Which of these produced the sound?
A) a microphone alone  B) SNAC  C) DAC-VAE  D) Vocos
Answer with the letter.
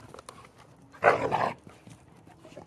A